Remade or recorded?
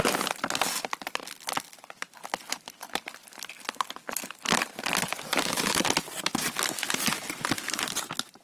recorded